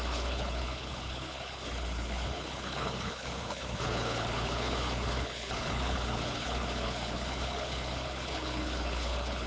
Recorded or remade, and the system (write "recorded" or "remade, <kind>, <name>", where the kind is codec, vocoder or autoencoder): remade, codec, HILCodec